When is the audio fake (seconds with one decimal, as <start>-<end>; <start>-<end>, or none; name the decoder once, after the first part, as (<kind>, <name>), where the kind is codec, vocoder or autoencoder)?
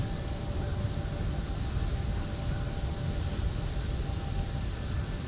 none